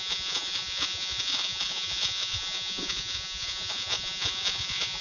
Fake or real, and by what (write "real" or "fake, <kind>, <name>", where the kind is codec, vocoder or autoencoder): fake, vocoder, Vocos